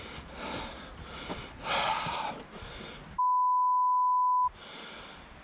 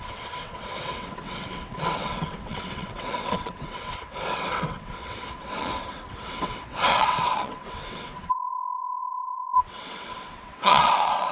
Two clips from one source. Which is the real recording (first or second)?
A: first